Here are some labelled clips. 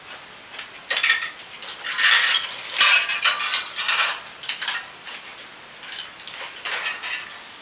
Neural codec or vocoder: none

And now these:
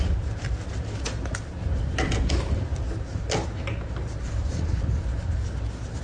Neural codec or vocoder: none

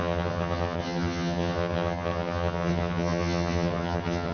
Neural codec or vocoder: vocoder, HiFi-GAN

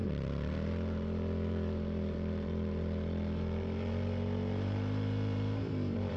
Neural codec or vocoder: vocoder, BigVGAN v2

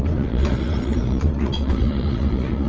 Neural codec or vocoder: vocoder, Vocos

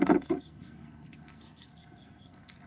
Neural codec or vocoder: codec, SNAC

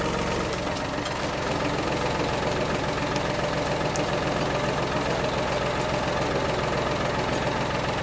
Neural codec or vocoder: none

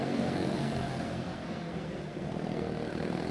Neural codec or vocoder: codec, SNAC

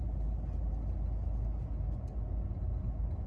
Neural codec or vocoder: none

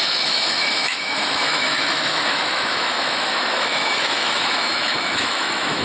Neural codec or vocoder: autoencoder, DAC-VAE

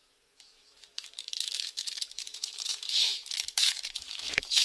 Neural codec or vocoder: autoencoder, DAC-VAE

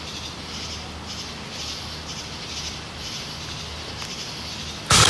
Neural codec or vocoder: none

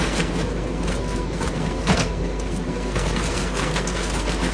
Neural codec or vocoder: codec, SNAC